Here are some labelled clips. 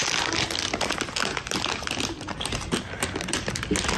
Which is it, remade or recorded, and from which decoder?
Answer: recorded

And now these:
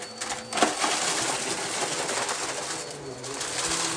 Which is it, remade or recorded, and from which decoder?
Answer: recorded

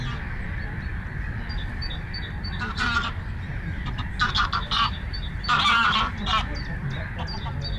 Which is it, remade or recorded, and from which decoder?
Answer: recorded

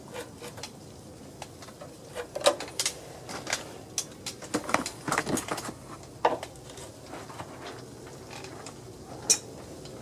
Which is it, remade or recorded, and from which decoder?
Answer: recorded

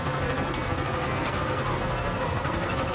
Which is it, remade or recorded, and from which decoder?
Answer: remade, codec, SNAC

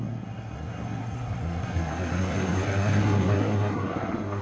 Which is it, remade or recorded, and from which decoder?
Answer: remade, codec, SNAC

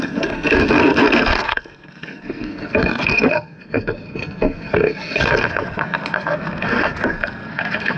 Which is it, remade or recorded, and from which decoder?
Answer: remade, codec, SNAC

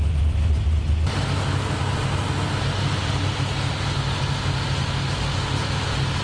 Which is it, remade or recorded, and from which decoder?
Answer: recorded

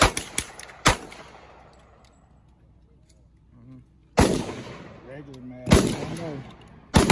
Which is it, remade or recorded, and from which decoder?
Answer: recorded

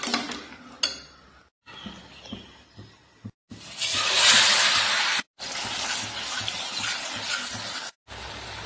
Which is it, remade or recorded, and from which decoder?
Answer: recorded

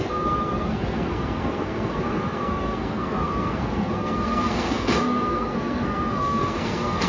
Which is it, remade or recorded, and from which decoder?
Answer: remade, codec, SNAC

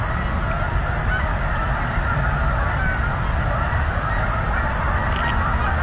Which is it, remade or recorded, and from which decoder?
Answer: recorded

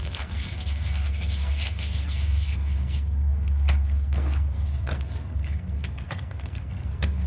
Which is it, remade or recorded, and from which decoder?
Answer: remade, codec, SNAC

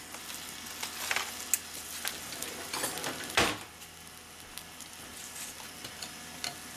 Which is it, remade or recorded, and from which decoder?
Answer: recorded